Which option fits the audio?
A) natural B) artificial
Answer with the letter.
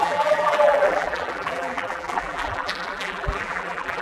B